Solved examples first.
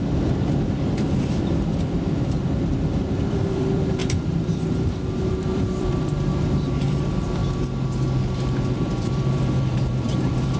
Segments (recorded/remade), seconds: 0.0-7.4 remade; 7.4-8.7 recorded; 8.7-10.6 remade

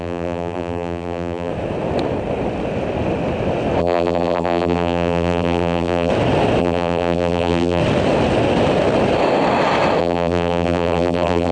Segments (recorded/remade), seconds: 0.0-1.5 remade; 1.5-3.8 recorded; 3.8-6.1 remade; 6.1-6.6 recorded; 6.6-7.8 remade; 7.8-10.0 recorded; 10.0-11.5 remade

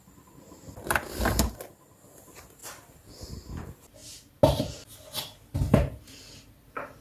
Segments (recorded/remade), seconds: 0.0-2.6 remade; 2.6-3.3 recorded; 3.3-7.0 remade

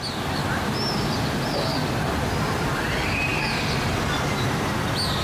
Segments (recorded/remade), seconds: 0.0-5.2 recorded

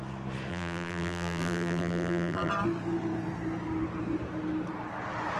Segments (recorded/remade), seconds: 0.0-0.5 recorded; 0.5-2.5 remade; 2.5-5.4 recorded

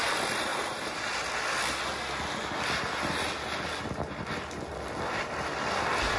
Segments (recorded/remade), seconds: 0.0-6.2 recorded

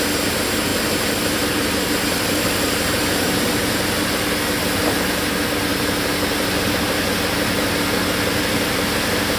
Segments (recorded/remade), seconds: 0.0-0.7 recorded; 0.7-2.9 remade; 2.9-5.7 recorded; 5.7-6.8 remade; 6.8-9.4 recorded

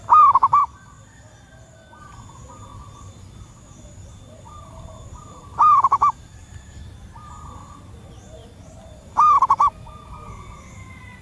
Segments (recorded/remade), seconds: 0.0-0.6 recorded; 0.6-2.0 remade; 2.0-2.7 recorded; 2.7-7.6 remade; 7.6-8.4 recorded; 8.4-10.1 remade; 10.1-11.2 recorded